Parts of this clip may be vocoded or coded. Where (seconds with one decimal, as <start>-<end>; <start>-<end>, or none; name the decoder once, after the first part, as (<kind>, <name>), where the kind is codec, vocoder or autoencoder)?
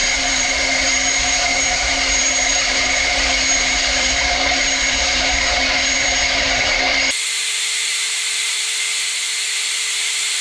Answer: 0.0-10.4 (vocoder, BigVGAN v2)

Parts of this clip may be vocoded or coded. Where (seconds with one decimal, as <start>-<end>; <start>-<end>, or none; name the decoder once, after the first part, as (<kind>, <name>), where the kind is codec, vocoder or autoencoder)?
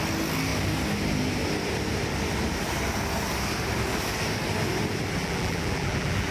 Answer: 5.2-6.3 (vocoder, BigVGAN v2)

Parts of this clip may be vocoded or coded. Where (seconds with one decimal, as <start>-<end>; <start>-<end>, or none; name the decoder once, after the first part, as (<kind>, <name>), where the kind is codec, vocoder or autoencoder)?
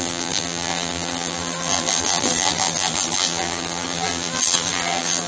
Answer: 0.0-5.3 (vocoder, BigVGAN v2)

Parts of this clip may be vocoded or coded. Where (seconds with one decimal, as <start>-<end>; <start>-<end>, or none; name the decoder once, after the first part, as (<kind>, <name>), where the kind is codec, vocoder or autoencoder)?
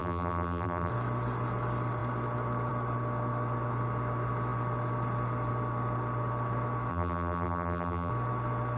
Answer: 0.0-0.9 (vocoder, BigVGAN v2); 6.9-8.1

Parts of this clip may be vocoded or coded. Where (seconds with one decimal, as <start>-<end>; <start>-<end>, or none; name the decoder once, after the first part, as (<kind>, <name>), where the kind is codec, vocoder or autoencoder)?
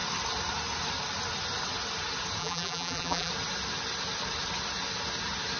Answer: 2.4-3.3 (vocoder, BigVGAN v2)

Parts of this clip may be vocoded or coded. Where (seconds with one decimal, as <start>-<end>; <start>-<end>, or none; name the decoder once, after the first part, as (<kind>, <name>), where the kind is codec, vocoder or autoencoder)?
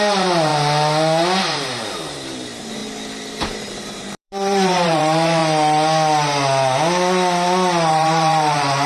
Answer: 0.0-0.5 (vocoder, BigVGAN v2); 1.4-2.8; 3.3-5.4; 7.9-8.9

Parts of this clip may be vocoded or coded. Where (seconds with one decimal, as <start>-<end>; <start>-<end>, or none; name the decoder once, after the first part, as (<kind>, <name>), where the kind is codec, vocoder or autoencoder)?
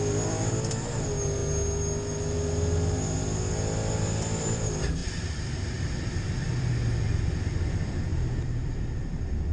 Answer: 0.0-1.4 (vocoder, BigVGAN v2); 4.4-9.5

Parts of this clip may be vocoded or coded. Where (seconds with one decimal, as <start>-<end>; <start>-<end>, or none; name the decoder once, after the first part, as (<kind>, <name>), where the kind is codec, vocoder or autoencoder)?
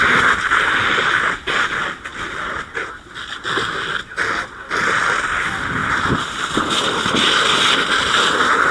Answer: 5.8-8.1 (vocoder, BigVGAN v2)